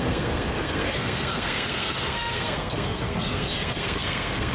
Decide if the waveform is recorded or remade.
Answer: remade